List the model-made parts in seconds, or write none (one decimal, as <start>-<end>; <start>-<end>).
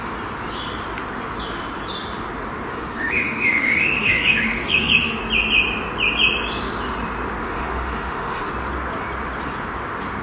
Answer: 2.7-5.2; 7.4-8.5